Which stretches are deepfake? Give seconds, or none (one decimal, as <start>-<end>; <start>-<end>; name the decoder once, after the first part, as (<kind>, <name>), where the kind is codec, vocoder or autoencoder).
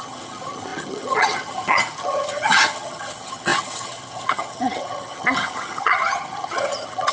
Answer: 0.0-7.1 (vocoder, HiFi-GAN)